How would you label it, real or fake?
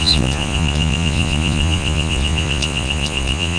fake